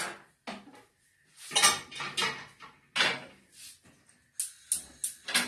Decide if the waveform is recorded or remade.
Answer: recorded